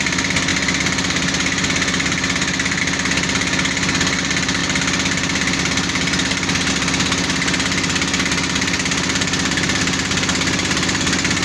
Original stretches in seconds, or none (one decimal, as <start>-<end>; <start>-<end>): 0.0-11.4

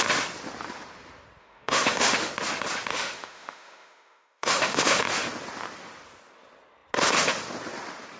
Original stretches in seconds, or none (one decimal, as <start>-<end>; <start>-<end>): 0.0-1.4; 2.3-2.9; 5.0-8.2

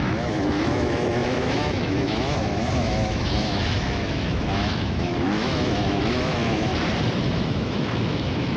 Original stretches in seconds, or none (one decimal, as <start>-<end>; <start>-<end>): 6.7-7.2

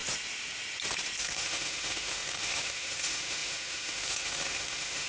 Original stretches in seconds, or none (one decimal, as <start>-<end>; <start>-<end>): 0.0-1.2